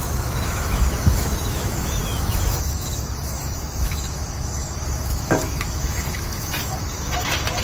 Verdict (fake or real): fake